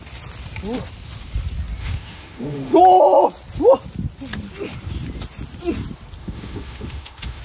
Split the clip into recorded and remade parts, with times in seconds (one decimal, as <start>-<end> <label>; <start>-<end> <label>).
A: 0.0-1.8 recorded; 1.8-2.8 remade; 2.8-6.2 recorded; 6.2-7.4 remade